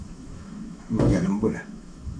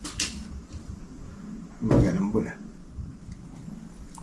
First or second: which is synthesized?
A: first